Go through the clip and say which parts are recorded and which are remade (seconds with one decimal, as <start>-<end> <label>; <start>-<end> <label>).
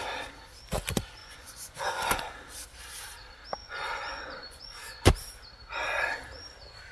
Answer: 0.0-1.2 recorded; 1.2-2.3 remade; 2.3-3.6 recorded; 3.6-5.0 remade; 5.0-6.9 recorded